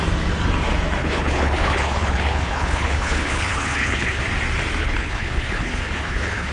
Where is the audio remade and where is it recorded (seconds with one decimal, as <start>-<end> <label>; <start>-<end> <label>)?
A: 0.0-1.0 recorded; 1.0-4.2 remade; 4.2-4.8 recorded; 4.8-6.5 remade